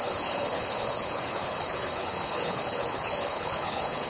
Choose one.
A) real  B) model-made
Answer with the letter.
B